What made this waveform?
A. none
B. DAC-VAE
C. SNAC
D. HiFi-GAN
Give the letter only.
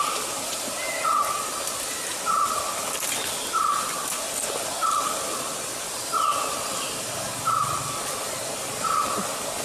A